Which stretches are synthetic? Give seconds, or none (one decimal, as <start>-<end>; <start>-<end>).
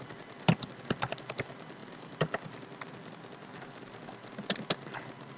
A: none